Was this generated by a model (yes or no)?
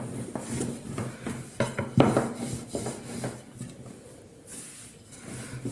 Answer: yes